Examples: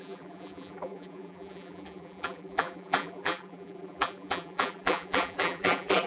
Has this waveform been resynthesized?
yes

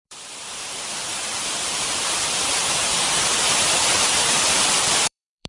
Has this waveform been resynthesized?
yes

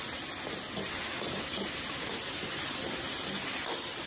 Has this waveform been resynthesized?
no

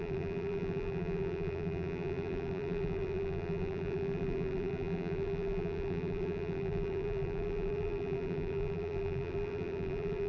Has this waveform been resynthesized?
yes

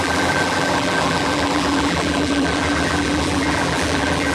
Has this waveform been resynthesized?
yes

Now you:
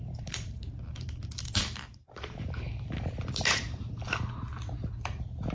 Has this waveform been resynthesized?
yes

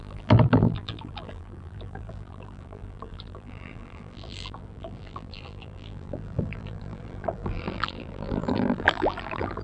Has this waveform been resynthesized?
yes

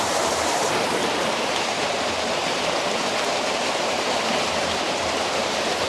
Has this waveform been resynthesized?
yes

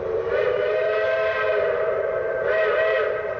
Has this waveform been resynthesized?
yes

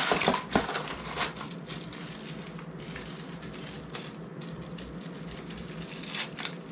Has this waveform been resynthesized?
yes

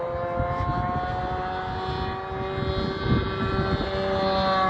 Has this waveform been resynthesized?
no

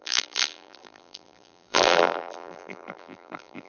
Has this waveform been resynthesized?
yes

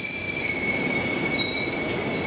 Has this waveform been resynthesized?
no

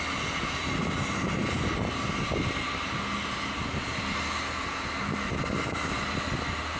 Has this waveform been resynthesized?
no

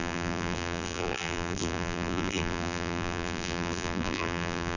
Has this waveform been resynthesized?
yes